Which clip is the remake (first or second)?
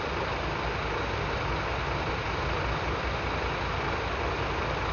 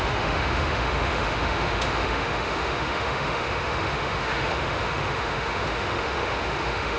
second